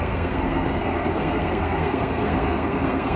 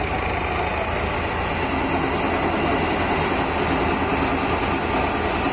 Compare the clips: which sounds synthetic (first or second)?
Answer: first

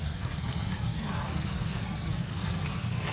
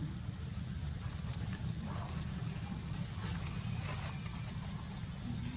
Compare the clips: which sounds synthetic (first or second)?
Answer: first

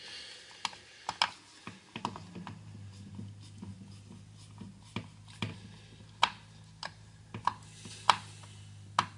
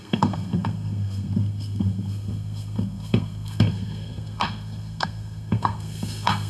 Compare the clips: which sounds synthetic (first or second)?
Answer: second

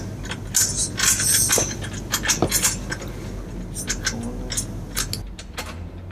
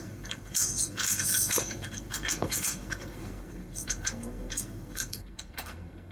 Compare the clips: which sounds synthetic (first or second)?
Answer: second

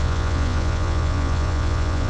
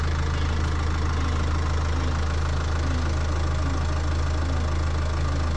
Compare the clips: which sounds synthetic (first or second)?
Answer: first